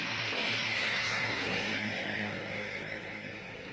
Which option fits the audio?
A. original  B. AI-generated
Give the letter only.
B